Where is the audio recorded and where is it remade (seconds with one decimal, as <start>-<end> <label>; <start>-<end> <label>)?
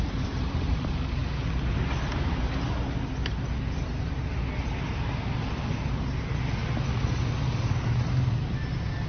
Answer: 0.0-9.1 recorded